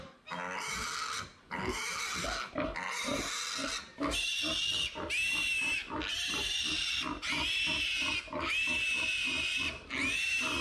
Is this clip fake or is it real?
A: real